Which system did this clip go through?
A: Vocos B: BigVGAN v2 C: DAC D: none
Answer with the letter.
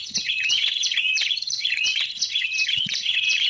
A